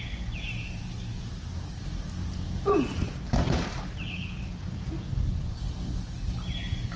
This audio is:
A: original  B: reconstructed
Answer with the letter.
A